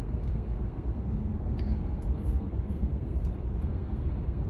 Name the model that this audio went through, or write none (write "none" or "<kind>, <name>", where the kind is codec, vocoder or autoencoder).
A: codec, SNAC